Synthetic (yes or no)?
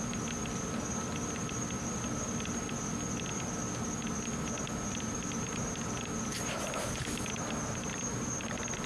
no